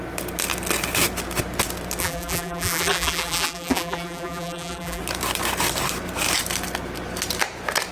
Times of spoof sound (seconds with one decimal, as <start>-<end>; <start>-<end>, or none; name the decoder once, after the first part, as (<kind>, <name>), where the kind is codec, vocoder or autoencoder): 2.0-5.0 (vocoder, BigVGAN v2)